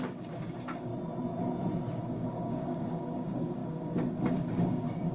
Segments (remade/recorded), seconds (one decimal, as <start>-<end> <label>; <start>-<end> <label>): 0.0-0.9 remade; 0.9-2.0 recorded; 2.0-5.1 remade